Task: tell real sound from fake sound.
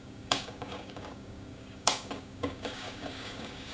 fake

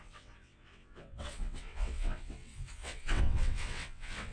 fake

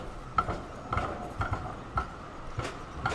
real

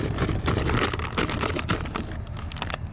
real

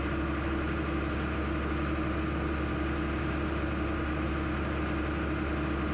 real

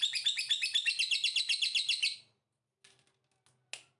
real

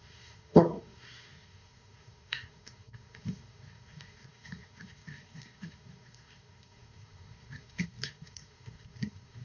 fake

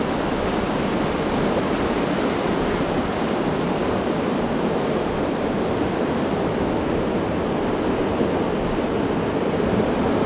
real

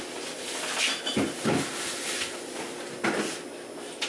real